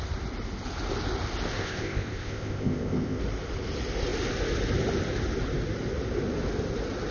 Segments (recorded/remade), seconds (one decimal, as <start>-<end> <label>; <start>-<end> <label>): 0.0-1.6 recorded; 1.6-3.2 remade; 3.2-7.1 recorded

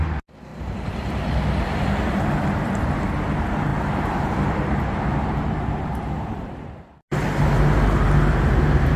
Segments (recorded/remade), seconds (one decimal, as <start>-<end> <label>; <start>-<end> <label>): 0.0-0.5 recorded; 0.5-1.3 remade; 1.3-3.7 recorded; 3.7-6.7 remade; 6.7-9.0 recorded